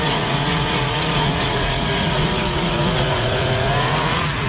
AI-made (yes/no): yes